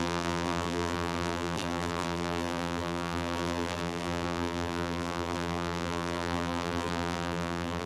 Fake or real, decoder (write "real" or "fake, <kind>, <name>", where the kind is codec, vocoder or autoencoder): fake, vocoder, BigVGAN v2